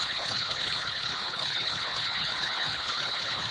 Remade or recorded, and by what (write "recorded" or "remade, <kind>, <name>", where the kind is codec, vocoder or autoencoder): remade, codec, HILCodec